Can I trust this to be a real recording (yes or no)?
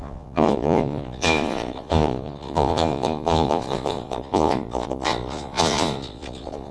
no